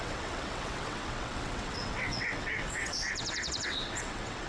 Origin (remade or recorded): remade